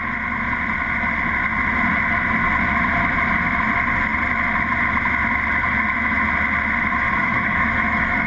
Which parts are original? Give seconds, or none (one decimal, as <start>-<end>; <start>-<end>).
0.0-7.2